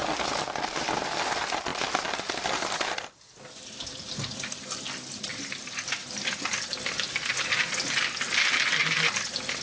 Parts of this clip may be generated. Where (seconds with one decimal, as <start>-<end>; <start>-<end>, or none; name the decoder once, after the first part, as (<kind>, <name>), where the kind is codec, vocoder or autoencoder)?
0.0-6.0 (vocoder, BigVGAN v2); 8.8-9.6